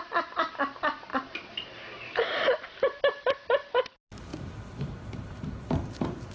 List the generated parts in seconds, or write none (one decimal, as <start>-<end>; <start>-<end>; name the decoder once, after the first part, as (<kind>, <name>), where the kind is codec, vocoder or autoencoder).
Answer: 1.1-3.0 (vocoder, BigVGAN v2); 4.3-6.3

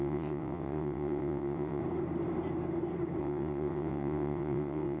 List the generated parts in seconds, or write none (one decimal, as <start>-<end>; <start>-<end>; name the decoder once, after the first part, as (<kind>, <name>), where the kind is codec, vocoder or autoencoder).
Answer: 0.0-1.8 (vocoder, WaveNeXt); 3.2-5.0